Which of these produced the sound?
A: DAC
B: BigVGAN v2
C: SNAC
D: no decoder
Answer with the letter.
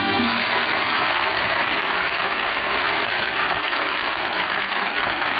C